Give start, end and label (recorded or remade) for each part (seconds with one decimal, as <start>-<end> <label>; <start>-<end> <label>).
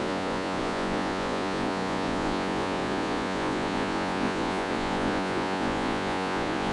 0.0-6.7 remade